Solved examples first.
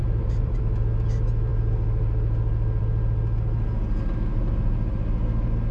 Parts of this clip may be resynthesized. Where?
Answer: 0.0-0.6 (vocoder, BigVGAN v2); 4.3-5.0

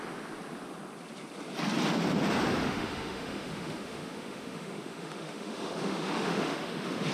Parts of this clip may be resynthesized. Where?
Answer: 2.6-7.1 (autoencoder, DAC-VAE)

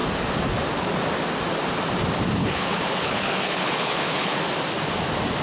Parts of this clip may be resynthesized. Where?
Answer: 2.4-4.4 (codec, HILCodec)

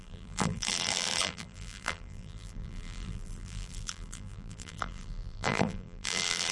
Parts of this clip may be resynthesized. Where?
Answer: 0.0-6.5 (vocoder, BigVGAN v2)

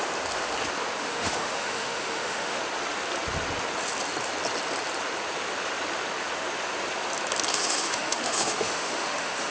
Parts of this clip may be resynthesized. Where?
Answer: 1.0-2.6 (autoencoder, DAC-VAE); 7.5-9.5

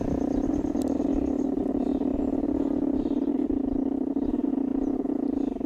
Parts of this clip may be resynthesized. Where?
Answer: none